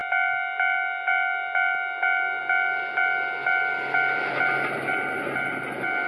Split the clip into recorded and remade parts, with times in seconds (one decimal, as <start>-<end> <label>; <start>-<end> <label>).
0.0-6.1 recorded